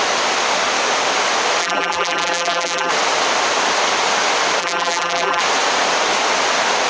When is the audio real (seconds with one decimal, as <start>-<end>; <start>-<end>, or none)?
0.0-1.6; 2.9-4.6; 5.4-6.9